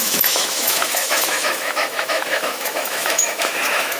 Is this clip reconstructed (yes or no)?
yes